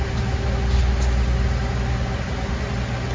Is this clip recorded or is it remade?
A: recorded